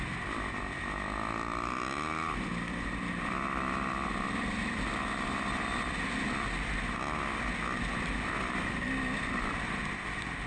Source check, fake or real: real